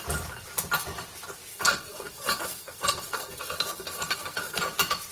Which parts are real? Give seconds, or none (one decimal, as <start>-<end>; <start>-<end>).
0.0-1.5; 4.6-5.1